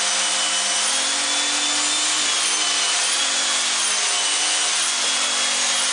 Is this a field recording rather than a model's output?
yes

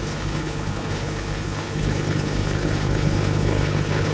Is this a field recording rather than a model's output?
no